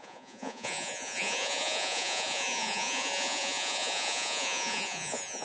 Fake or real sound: fake